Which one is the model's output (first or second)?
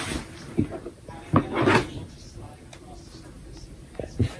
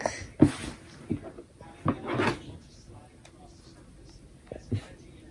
first